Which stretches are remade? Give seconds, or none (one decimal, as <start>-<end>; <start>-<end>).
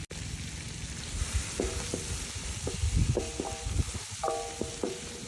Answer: none